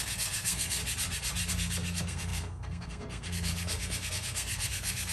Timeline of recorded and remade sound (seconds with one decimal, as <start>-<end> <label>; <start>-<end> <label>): 0.0-0.8 remade; 0.8-1.5 recorded; 1.5-5.1 remade